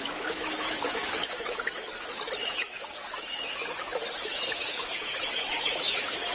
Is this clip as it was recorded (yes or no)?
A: no